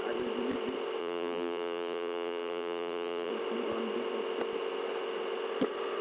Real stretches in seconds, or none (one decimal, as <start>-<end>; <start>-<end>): 0.0-1.0; 3.3-6.0